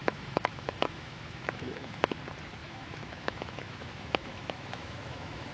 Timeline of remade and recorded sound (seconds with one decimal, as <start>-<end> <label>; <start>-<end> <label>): 0.0-2.1 remade; 2.1-2.6 recorded; 2.6-5.5 remade